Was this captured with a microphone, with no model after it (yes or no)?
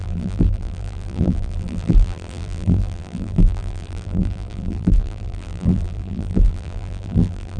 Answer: no